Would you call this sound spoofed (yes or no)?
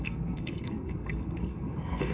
yes